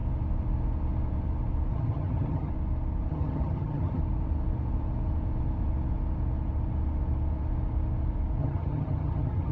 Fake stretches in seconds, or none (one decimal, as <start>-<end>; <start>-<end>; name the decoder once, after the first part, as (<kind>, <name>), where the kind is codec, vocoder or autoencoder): 1.7-2.5 (vocoder, HiFi-GAN); 3.1-4.0; 8.4-9.5